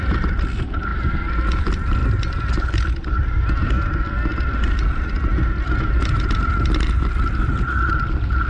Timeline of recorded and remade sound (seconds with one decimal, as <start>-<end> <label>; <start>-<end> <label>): 0.0-8.5 recorded